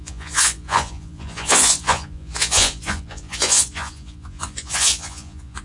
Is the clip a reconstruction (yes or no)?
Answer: yes